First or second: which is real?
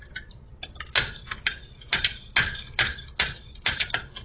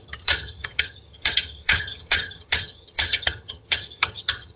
first